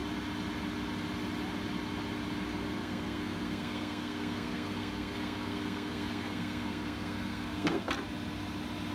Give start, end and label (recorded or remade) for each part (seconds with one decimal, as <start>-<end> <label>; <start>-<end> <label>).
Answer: 0.0-2.8 recorded; 2.8-7.9 remade; 7.9-8.9 recorded